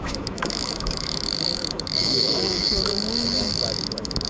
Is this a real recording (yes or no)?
no